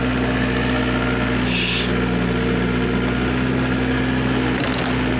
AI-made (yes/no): no